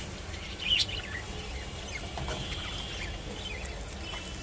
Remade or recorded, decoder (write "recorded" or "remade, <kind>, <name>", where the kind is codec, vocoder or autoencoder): recorded